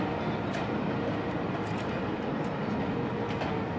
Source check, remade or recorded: recorded